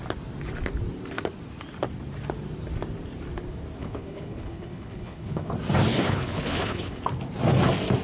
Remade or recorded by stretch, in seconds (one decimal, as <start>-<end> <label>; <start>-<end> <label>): 0.0-3.8 recorded; 3.8-5.5 remade; 5.5-5.9 recorded; 5.9-7.0 remade; 7.0-8.0 recorded